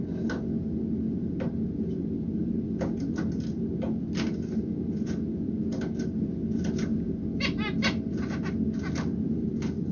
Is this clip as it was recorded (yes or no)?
yes